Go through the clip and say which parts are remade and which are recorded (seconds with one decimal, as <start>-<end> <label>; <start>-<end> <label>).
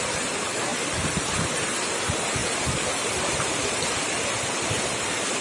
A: 0.0-5.4 recorded